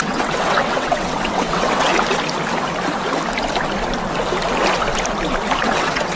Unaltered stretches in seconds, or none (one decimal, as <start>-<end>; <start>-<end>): 1.9-5.6